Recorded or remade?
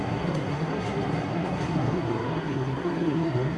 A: remade